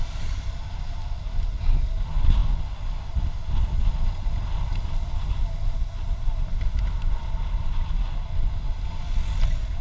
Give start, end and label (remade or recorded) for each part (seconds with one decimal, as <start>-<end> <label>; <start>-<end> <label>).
0.0-9.8 recorded